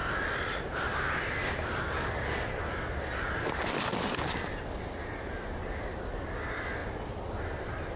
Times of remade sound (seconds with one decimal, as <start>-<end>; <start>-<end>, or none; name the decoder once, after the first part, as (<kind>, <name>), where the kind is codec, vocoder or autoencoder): none